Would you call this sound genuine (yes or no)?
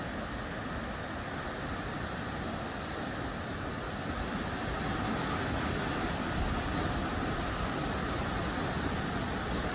yes